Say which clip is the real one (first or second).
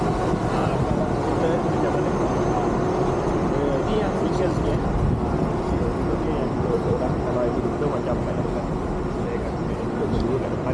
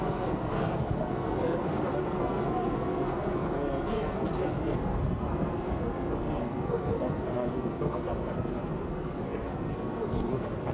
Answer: first